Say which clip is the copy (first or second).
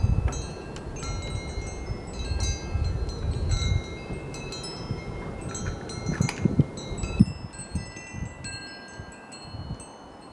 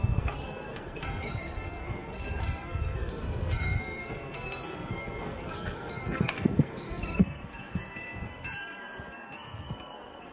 second